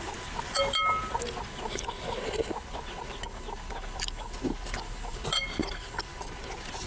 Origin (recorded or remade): recorded